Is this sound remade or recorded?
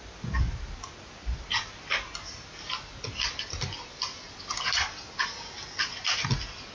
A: recorded